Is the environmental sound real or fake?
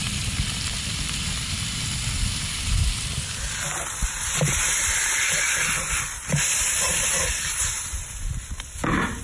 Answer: fake